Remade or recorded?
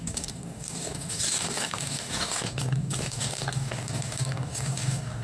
remade